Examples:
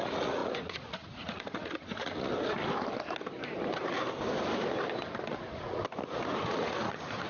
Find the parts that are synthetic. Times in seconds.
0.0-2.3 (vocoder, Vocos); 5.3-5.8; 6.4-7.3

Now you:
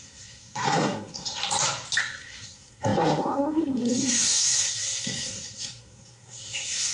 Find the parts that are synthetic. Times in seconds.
0.0-1.4 (codec, SNAC); 2.0-6.9

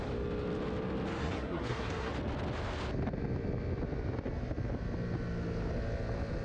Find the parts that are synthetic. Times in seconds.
1.2-2.1 (codec, SNAC)

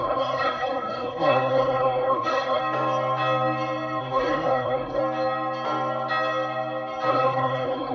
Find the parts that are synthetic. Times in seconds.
0.0-2.6 (codec, SNAC); 4.0-5.0; 7.1-7.9

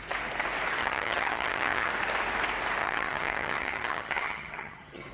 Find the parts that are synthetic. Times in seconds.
0.8-1.9 (vocoder, HiFi-GAN); 2.8-5.1

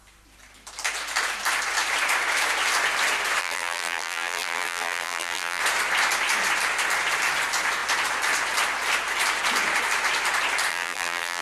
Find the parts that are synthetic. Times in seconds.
3.4-5.6 (vocoder, BigVGAN v2); 10.7-11.4

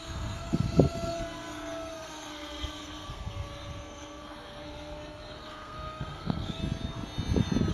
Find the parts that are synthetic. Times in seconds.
0.0-6.6 (codec, SNAC)

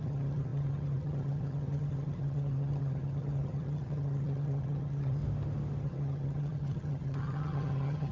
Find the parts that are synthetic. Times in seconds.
0.0-5.2 (vocoder, HiFi-GAN); 5.8-8.1